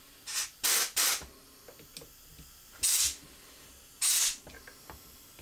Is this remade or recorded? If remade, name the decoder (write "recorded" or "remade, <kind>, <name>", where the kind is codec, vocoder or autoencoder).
recorded